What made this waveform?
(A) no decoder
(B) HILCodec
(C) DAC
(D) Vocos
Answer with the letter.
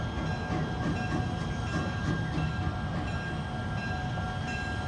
A